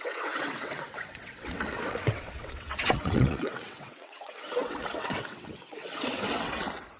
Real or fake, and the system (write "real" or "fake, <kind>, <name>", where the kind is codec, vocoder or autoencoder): fake, vocoder, WaveNeXt